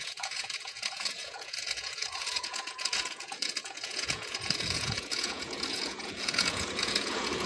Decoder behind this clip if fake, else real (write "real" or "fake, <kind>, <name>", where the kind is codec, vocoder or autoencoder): fake, vocoder, Vocos